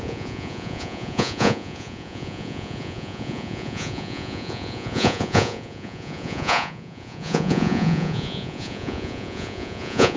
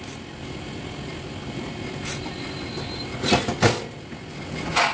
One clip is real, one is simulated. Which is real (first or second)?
second